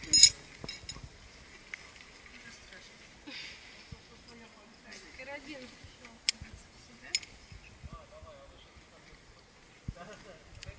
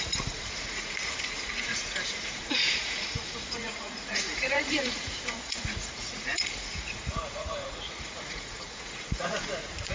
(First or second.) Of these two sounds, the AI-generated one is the second